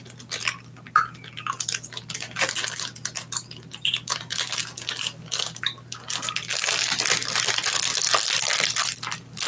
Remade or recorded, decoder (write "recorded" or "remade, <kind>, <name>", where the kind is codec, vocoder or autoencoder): recorded